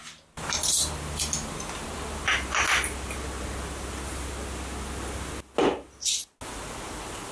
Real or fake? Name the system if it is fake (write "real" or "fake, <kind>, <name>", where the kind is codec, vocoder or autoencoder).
real